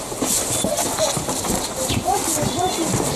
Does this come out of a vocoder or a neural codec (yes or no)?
no